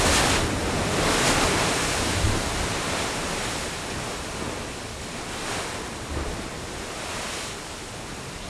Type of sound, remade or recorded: recorded